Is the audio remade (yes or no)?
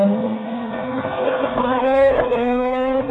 yes